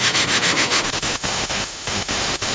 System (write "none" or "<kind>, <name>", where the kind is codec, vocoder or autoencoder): autoencoder, DAC-VAE